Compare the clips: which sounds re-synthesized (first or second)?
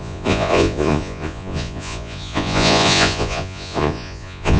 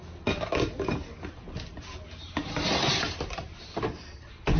first